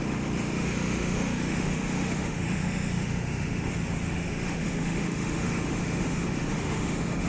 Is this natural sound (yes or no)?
no